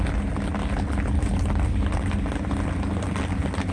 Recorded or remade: recorded